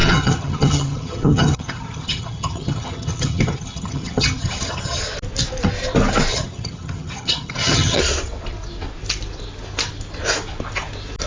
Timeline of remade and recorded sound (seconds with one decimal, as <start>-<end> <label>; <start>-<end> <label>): 0.0-5.0 remade; 5.0-6.3 recorded; 6.3-8.0 remade; 8.0-11.3 recorded